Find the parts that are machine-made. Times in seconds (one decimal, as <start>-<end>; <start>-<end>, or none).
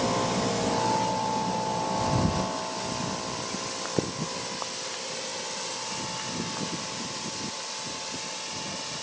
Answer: none